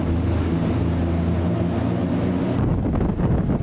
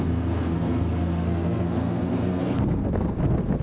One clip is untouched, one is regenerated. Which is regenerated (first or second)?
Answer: second